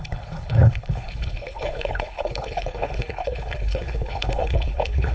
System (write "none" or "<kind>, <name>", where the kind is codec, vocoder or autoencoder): codec, HILCodec